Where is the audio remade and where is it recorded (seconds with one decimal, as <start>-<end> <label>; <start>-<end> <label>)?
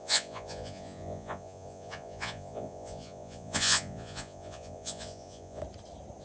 0.0-5.6 remade; 5.6-6.2 recorded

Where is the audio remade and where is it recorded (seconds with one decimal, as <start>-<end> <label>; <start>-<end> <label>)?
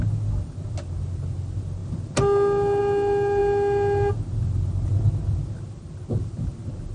0.0-6.9 recorded